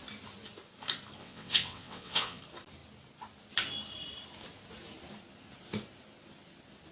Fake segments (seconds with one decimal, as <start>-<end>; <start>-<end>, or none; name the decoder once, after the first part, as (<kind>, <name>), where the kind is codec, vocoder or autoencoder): 1.2-2.4 (vocoder, WaveNeXt)